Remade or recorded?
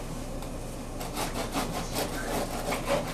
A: recorded